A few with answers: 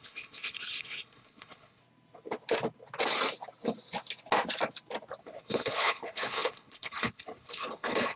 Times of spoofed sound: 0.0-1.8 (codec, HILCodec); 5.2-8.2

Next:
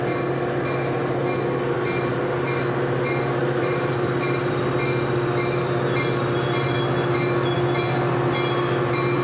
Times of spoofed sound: 3.4-4.6 (vocoder, BigVGAN v2)

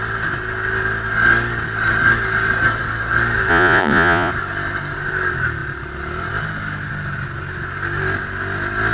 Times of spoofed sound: 3.5-4.3 (vocoder, Vocos)

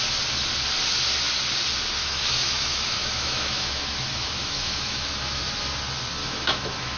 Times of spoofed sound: 2.0-5.4 (autoencoder, DAC-VAE); 6.2-7.0

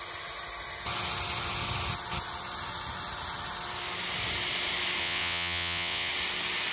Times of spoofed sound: 5.0-6.1 (vocoder, WaveNeXt)

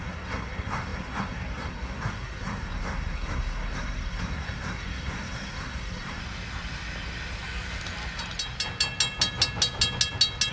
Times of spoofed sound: 0.0-6.2 (codec, SNAC)

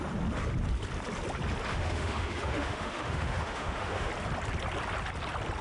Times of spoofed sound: 1.7-4.1 (autoencoder, DAC-VAE)